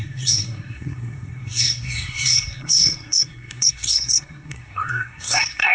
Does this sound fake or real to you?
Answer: fake